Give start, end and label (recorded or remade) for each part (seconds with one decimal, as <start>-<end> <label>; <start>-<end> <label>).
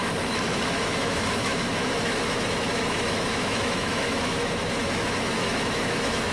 0.0-6.3 remade